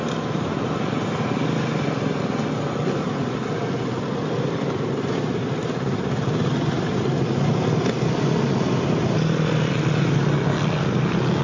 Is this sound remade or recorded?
recorded